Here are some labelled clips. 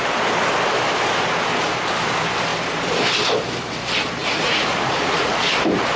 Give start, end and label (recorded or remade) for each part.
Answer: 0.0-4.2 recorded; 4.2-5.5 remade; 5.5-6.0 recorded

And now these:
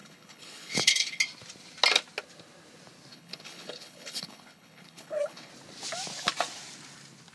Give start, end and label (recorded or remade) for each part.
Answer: 0.0-1.2 remade; 1.2-3.1 recorded; 3.1-5.5 remade; 5.5-7.3 recorded

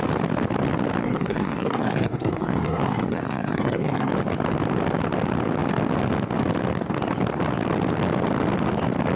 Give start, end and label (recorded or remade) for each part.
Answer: 0.0-1.0 recorded; 1.0-4.1 remade; 4.1-9.2 recorded

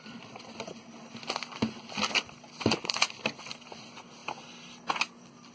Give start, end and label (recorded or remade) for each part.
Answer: 0.0-5.5 recorded

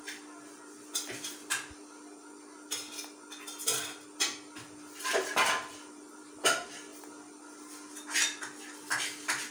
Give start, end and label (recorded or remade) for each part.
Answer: 0.0-9.5 recorded

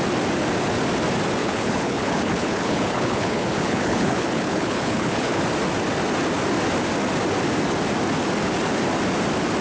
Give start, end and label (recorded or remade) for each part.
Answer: 0.0-1.4 recorded; 1.4-5.4 remade; 5.4-9.6 recorded

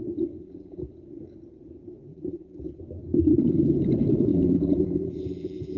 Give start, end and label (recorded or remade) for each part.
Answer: 0.0-0.4 recorded; 0.4-0.9 remade; 0.9-2.1 recorded; 2.1-2.8 remade; 2.8-4.3 recorded; 4.3-5.8 remade